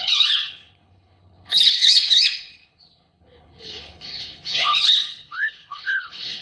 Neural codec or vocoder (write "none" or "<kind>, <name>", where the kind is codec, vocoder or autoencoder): codec, HILCodec